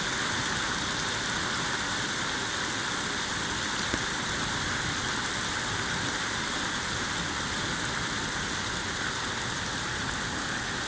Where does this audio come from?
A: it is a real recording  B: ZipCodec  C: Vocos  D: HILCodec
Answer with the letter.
A